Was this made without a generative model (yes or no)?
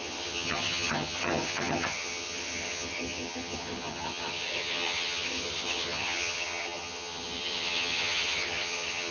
no